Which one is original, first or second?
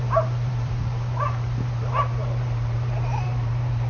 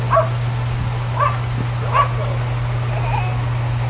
second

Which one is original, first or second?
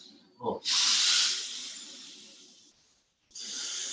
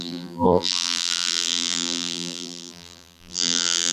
first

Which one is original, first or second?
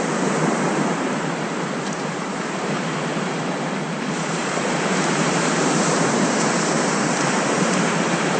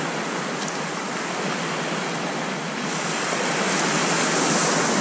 second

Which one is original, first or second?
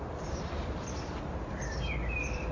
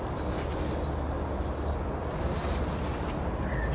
second